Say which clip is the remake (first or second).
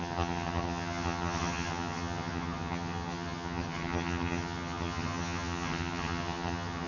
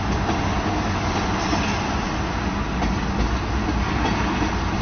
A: first